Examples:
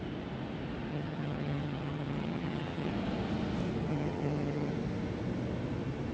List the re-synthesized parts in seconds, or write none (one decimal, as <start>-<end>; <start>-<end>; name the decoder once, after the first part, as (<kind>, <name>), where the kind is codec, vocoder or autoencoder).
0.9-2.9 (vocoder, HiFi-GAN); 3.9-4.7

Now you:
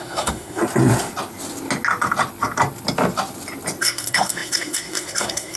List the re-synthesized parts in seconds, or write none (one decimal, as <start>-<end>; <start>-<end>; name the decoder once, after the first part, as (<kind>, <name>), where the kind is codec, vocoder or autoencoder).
0.0-0.6 (codec, SNAC); 3.8-5.6

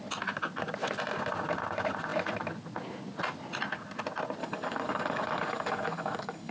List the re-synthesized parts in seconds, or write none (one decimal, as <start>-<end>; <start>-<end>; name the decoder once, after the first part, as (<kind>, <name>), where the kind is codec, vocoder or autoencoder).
4.4-6.5 (codec, DAC)

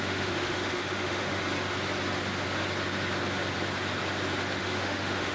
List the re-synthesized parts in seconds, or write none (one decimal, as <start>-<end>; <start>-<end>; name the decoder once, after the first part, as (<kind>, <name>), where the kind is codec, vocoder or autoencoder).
0.0-1.4 (autoencoder, DAC-VAE); 4.6-5.3